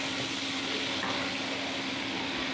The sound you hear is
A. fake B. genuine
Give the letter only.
B